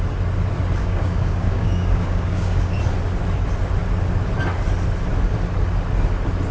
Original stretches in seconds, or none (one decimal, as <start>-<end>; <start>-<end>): 0.0-0.8; 2.8-6.5